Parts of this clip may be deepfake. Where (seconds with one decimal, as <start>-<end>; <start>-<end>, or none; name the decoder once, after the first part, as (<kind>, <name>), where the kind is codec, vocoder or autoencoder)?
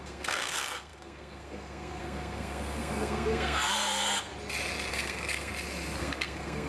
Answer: 0.0-4.3 (codec, SNAC); 4.9-5.5; 6.0-6.7